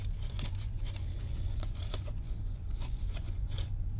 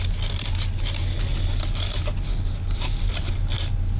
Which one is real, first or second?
second